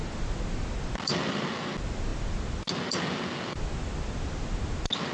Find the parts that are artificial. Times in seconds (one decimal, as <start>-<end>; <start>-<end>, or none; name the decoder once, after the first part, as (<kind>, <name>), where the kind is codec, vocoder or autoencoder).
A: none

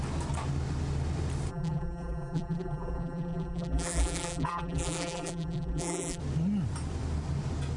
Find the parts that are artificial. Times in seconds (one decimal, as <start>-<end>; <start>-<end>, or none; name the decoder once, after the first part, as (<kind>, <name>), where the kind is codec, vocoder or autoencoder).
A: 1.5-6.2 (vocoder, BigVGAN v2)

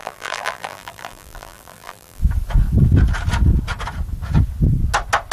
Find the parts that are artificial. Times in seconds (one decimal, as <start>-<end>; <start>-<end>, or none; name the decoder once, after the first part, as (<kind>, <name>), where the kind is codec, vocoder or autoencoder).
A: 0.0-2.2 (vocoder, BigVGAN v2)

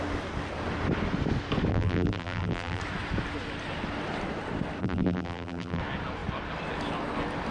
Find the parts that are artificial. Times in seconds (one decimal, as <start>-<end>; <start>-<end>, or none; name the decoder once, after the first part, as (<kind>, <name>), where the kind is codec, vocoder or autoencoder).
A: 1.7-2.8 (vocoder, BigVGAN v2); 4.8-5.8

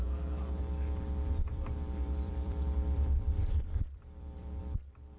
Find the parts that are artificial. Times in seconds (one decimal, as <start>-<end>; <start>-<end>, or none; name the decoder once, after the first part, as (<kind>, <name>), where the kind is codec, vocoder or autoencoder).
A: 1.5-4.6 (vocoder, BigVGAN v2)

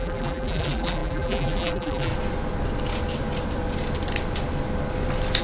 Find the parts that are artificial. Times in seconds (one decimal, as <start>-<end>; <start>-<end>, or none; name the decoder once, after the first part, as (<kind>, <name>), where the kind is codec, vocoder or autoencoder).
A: 0.0-2.1 (vocoder, BigVGAN v2)

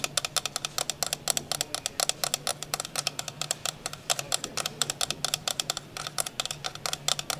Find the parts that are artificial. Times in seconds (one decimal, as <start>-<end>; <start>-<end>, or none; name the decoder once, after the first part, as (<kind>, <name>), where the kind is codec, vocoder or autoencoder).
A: 2.5-5.0 (vocoder, BigVGAN v2); 5.4-6.3